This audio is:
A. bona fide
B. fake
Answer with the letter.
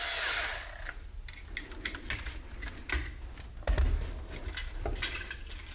A